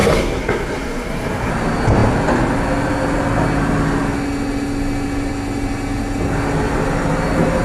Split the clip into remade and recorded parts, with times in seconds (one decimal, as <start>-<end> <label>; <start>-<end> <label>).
0.0-1.5 remade; 1.5-7.6 recorded